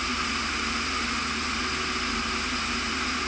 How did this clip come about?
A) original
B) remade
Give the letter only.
A